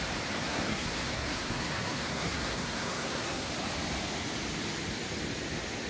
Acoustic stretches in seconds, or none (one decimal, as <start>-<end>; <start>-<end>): 0.0-0.4; 3.5-5.9